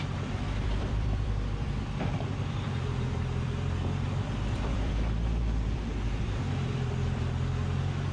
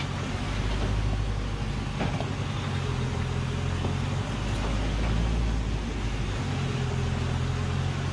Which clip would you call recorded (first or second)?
second